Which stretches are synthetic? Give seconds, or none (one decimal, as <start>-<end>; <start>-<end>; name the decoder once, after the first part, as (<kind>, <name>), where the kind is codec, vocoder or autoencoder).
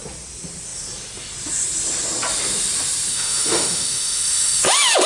3.1-4.6 (autoencoder, DAC-VAE)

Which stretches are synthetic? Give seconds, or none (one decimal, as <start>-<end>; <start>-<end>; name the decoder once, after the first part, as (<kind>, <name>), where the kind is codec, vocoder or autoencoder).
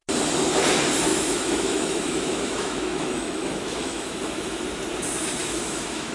1.1-4.6 (autoencoder, DAC-VAE); 5.4-6.1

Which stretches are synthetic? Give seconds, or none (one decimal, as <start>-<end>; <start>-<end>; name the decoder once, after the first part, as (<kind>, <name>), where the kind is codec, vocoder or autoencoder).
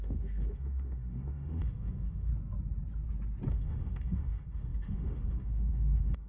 0.0-2.3 (autoencoder, DAC-VAE); 3.5-6.3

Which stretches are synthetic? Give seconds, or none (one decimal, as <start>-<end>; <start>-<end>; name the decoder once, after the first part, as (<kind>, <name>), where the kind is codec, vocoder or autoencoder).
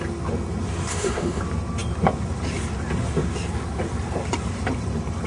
0.9-1.4 (autoencoder, DAC-VAE)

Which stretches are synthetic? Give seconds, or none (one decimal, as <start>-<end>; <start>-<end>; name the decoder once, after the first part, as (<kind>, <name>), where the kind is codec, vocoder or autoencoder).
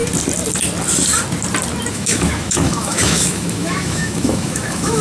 1.9-5.0 (autoencoder, DAC-VAE)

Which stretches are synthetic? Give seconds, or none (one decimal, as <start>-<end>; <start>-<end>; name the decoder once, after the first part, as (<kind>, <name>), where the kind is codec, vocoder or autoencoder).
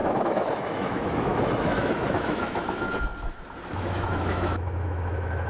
0.0-3.1 (autoencoder, DAC-VAE); 3.7-5.5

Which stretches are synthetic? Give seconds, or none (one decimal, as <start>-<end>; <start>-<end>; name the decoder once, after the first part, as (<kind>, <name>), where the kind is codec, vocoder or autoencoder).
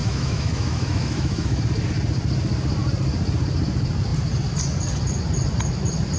0.0-1.6 (autoencoder, DAC-VAE)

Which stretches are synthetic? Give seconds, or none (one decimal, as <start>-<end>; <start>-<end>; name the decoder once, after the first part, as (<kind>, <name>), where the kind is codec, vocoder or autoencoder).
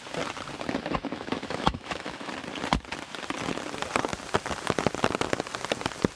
1.0-2.3 (autoencoder, DAC-VAE)